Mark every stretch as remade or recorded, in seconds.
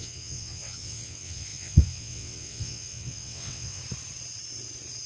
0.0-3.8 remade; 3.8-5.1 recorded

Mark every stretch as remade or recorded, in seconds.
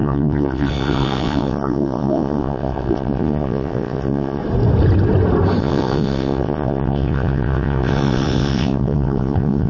0.0-4.4 remade; 4.4-5.6 recorded; 5.6-9.7 remade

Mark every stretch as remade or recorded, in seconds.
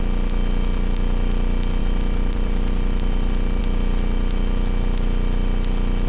0.0-1.8 recorded; 1.8-3.6 remade; 3.6-6.1 recorded